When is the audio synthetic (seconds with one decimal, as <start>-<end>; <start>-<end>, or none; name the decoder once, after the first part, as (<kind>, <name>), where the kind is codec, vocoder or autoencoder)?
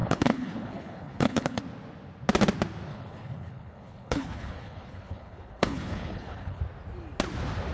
0.0-1.6 (codec, HILCodec); 2.9-6.6